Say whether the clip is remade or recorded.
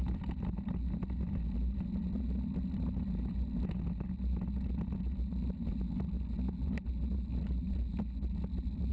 recorded